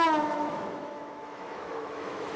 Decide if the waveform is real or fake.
fake